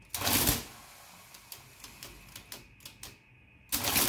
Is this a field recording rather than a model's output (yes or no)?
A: yes